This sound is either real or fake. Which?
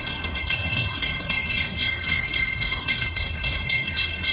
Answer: fake